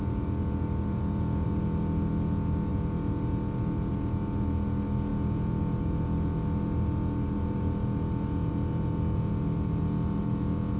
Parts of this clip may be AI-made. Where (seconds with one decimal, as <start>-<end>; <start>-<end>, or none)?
none